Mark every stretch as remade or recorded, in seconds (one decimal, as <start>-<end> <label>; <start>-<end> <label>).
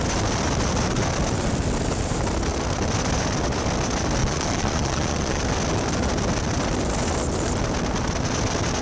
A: 0.0-4.2 recorded; 4.2-5.4 remade; 5.4-8.8 recorded